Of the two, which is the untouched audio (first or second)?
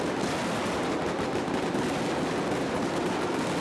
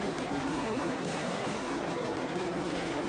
first